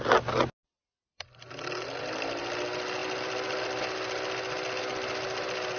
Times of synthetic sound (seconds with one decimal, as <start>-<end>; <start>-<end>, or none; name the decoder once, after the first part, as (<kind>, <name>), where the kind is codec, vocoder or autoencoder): none